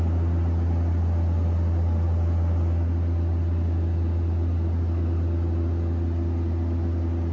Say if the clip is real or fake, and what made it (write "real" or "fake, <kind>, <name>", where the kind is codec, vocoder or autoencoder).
real